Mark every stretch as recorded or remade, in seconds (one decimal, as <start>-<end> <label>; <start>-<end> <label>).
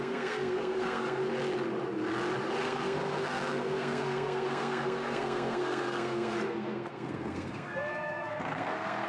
0.0-1.2 remade; 1.2-2.6 recorded; 2.6-9.1 remade